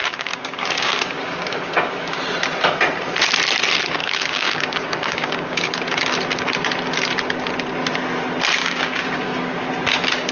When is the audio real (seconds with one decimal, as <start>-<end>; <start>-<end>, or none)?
2.2-4.0; 5.7-8.6; 9.7-10.3